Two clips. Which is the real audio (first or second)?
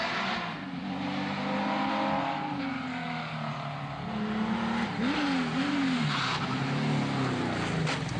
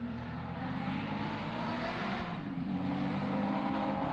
first